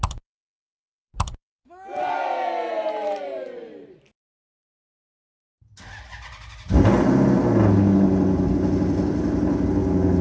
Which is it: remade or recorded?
recorded